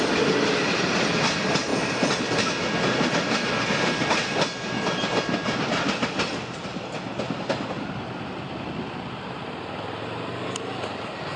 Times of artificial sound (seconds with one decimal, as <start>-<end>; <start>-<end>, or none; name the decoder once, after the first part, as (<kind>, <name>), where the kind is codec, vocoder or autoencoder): none